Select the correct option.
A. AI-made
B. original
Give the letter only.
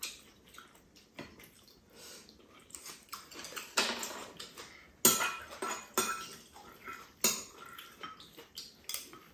B